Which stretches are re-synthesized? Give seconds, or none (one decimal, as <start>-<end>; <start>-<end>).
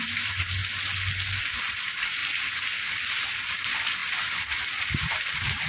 0.0-0.6; 1.3-2.2; 3.0-4.0; 5.1-5.7